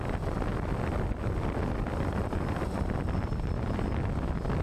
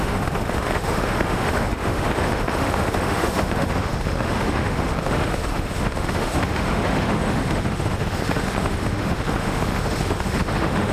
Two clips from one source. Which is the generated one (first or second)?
second